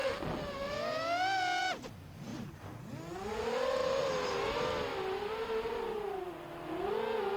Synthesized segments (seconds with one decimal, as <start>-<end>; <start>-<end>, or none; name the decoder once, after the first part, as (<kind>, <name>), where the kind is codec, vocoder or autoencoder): 2.3-2.9 (vocoder, BigVGAN v2); 3.8-4.4; 4.9-6.3